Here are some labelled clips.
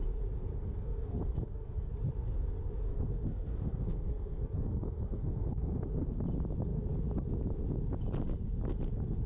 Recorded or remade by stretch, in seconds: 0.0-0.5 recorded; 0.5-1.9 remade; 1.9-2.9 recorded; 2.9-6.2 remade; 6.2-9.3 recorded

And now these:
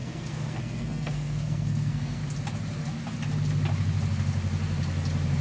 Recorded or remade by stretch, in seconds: 0.0-2.2 remade; 2.2-5.4 recorded